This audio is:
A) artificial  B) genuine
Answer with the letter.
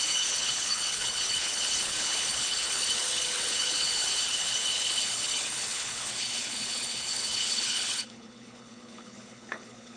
A